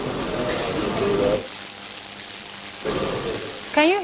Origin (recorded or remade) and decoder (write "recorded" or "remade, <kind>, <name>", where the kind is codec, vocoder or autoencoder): recorded